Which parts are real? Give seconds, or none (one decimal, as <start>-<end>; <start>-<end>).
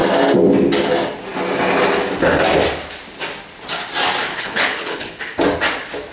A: 0.0-4.3; 5.2-6.1